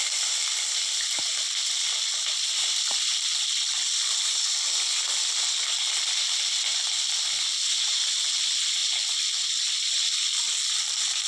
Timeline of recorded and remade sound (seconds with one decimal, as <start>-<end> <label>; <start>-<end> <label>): 0.0-11.3 recorded